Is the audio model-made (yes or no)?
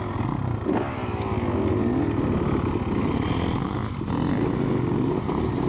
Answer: no